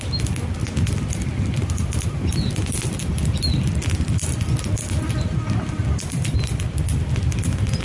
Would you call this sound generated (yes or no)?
no